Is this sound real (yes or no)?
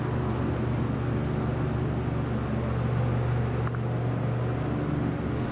yes